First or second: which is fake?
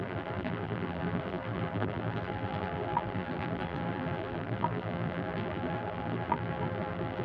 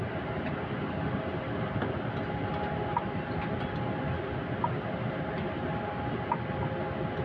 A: first